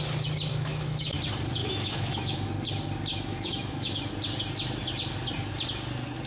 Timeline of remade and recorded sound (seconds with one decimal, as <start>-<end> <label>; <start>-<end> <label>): 0.0-0.5 recorded; 0.5-1.2 remade; 1.2-1.6 recorded; 1.6-2.5 remade; 2.5-3.1 recorded; 3.1-4.1 remade; 4.1-6.3 recorded